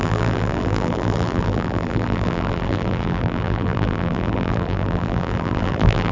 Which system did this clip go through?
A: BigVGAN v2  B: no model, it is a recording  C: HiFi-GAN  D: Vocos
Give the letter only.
A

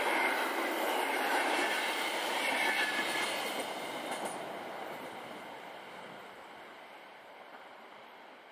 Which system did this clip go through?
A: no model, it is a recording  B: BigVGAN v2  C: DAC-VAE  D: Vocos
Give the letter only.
B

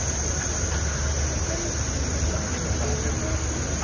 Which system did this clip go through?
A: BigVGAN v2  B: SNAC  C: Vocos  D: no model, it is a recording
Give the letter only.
D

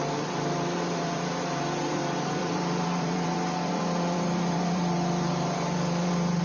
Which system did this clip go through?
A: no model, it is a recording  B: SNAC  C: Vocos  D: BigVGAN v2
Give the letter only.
D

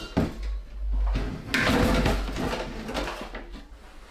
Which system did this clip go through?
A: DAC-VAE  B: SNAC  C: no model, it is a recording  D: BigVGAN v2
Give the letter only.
C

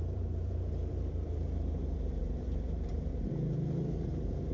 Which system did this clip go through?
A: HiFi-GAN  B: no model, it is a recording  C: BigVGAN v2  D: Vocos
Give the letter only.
C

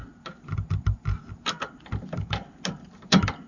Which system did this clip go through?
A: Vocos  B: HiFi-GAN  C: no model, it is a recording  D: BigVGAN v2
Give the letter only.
D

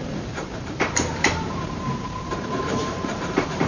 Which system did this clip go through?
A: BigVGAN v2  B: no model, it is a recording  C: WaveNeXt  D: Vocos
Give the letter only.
A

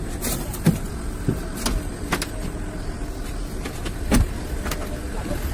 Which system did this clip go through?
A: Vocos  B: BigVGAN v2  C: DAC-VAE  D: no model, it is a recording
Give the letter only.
D